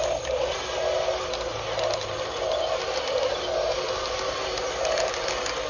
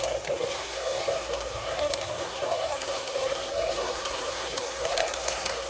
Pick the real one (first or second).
first